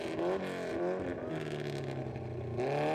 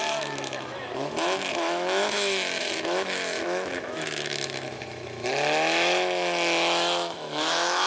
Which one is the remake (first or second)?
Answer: second